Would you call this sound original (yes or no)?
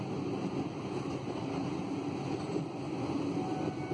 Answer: yes